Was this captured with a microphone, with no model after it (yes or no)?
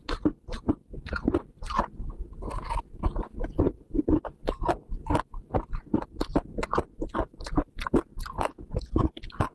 yes